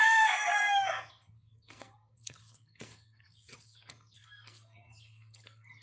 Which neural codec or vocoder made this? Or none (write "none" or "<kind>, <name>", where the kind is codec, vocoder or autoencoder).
codec, SNAC